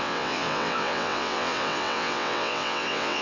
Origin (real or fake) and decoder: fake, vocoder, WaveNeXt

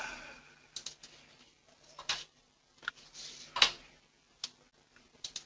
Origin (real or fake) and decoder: real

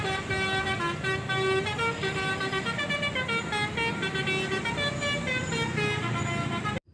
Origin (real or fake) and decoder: real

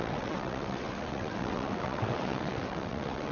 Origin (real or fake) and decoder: fake, vocoder, WaveNeXt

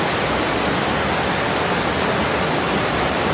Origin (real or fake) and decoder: real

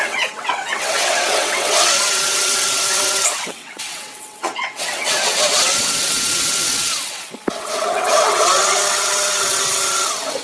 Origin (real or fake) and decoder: fake, vocoder, WaveNeXt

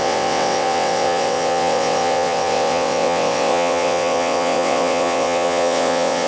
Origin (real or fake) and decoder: fake, vocoder, WaveNeXt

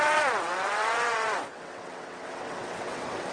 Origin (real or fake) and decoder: fake, vocoder, WaveNeXt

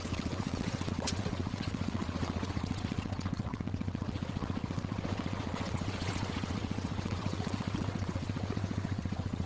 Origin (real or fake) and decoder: fake, vocoder, WaveNeXt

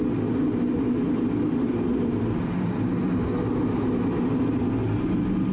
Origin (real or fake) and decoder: real